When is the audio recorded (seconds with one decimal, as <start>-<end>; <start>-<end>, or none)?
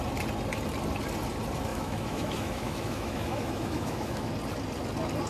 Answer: 0.0-1.7; 4.3-5.3